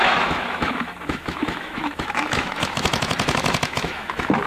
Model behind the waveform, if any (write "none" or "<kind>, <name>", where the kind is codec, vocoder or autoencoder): autoencoder, DAC-VAE